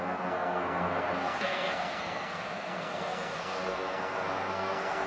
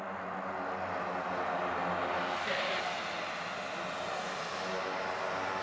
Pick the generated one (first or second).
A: first